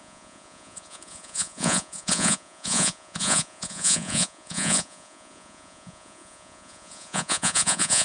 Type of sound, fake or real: fake